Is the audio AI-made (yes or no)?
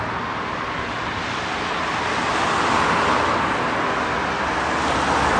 no